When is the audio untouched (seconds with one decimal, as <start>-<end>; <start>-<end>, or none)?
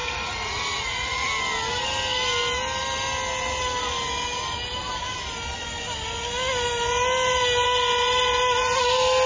1.3-9.3